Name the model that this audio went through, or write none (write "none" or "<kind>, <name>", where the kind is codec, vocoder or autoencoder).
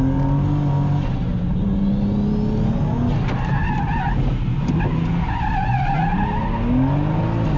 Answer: none